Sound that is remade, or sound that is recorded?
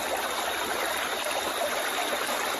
recorded